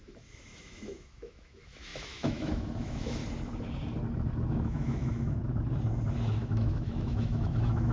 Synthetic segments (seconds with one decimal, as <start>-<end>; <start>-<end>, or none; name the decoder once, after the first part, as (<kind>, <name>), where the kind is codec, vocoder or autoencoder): 0.0-3.2 (autoencoder, DAC-VAE); 4.5-5.4; 6.4-7.9